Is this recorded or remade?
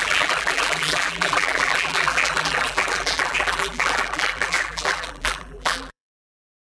remade